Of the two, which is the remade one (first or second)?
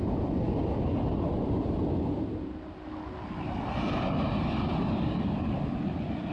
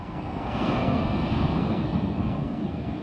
second